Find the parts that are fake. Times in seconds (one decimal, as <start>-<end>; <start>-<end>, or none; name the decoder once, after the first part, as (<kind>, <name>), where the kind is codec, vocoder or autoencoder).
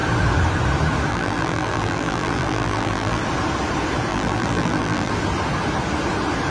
1.1-3.2 (vocoder, BigVGAN v2); 4.1-5.1